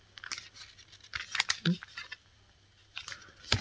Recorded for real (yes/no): yes